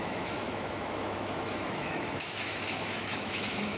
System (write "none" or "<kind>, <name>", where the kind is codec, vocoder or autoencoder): autoencoder, DAC-VAE